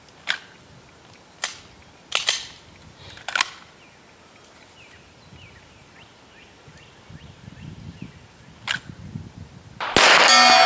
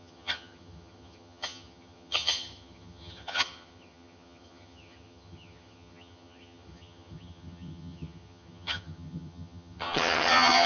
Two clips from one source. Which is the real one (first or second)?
first